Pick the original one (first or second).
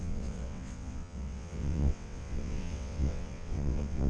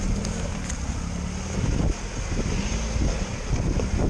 second